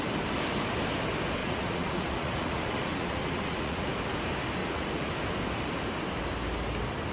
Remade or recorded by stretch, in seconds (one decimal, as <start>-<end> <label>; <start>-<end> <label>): 0.0-1.4 recorded; 1.4-3.9 remade; 3.9-4.6 recorded; 4.6-5.1 remade; 5.1-7.1 recorded

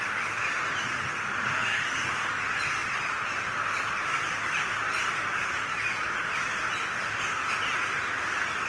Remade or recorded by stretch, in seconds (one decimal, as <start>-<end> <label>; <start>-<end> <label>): 0.0-1.7 recorded; 1.7-2.4 remade; 2.4-8.7 recorded

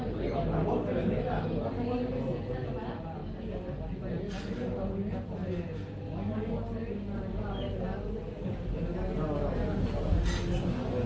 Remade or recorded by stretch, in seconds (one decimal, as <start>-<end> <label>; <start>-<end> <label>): 0.0-5.4 recorded; 5.4-5.9 remade; 5.9-11.1 recorded

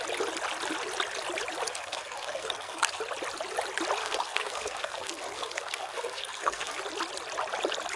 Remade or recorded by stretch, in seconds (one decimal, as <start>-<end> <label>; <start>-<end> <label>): 0.0-1.7 recorded; 1.7-3.0 remade; 3.0-4.0 recorded; 4.0-6.8 remade; 6.8-8.0 recorded

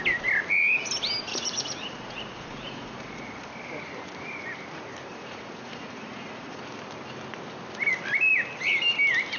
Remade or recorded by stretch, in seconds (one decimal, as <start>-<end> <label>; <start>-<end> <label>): 0.0-1.3 recorded; 1.3-3.5 remade; 3.5-5.1 recorded; 5.1-6.6 remade; 6.6-9.4 recorded

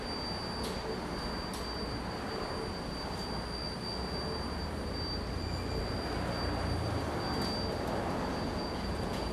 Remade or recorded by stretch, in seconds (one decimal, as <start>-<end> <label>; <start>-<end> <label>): 0.0-8.5 recorded; 8.5-9.3 remade

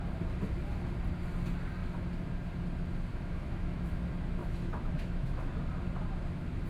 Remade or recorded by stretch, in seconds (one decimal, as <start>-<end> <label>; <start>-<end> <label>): 0.0-3.1 recorded; 3.1-3.9 remade; 3.9-4.4 recorded; 4.4-5.5 remade; 5.5-6.7 recorded